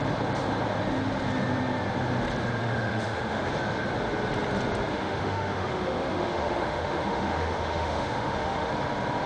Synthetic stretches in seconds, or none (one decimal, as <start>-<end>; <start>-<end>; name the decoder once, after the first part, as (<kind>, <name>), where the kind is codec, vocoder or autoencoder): 2.6-3.5 (autoencoder, DAC-VAE); 4.9-8.7